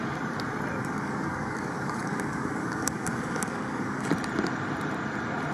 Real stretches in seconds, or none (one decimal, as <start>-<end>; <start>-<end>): 0.0-0.8; 4.1-5.5